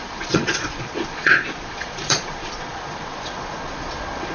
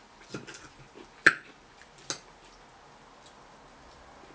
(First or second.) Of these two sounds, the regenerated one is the first